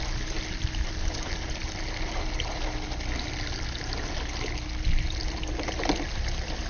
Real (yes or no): yes